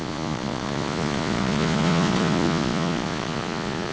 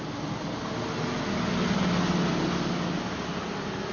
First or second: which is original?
second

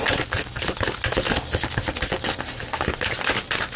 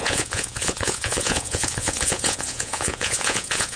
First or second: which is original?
first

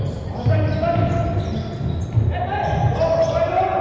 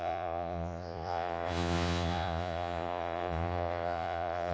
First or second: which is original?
first